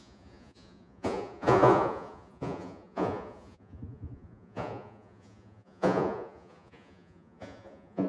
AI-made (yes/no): yes